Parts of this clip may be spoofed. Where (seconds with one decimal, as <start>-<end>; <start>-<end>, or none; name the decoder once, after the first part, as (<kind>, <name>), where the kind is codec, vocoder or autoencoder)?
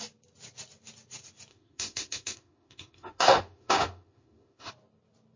1.5-4.7 (autoencoder, DAC-VAE)